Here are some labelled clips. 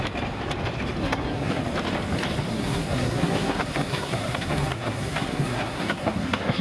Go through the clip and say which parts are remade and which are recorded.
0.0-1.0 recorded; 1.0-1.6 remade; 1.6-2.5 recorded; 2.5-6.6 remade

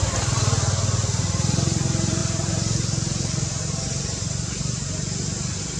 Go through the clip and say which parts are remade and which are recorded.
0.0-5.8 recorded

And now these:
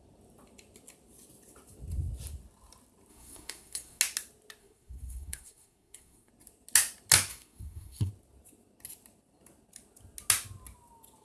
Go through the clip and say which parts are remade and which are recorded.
0.0-3.1 recorded; 3.1-4.0 remade; 4.0-4.6 recorded; 4.6-6.3 remade; 6.3-7.3 recorded; 7.3-8.1 remade; 8.1-11.2 recorded

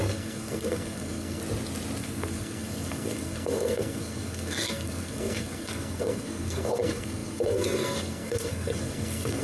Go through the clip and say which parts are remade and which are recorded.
0.0-1.4 remade; 1.4-2.0 recorded; 2.0-9.4 remade